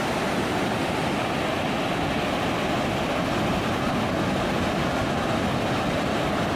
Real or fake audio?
real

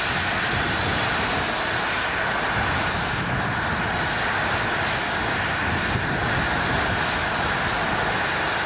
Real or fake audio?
real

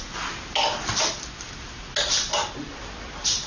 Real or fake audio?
real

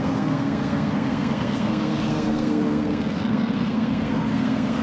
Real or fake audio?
fake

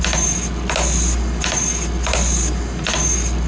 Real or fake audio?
real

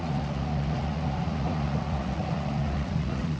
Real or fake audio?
fake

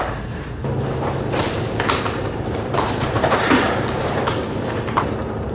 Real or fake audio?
fake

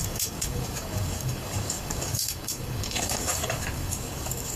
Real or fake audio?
fake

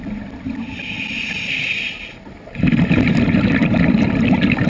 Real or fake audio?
real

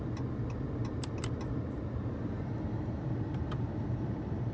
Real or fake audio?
real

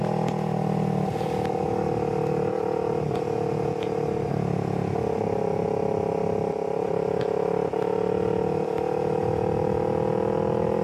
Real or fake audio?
real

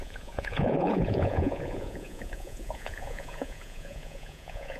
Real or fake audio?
fake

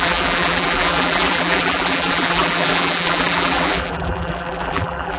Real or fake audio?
fake